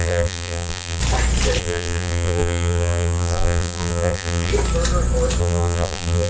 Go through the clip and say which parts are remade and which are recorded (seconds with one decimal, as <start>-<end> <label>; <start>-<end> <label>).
0.0-1.0 remade; 1.0-1.6 recorded; 1.6-4.5 remade; 4.5-5.4 recorded; 5.4-6.3 remade

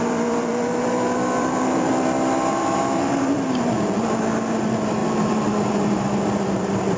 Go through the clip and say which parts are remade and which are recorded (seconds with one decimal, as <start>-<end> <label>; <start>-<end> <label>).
0.0-3.7 remade; 3.7-4.6 recorded; 4.6-7.0 remade

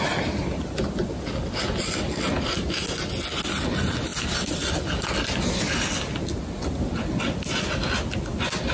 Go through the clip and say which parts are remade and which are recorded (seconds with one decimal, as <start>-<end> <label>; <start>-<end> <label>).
0.0-8.7 recorded